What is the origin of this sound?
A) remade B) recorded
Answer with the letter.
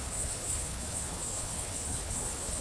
A